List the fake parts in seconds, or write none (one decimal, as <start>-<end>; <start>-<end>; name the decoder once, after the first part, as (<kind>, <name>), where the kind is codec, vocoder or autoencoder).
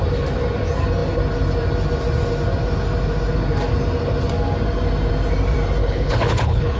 5.8-6.8 (codec, HILCodec)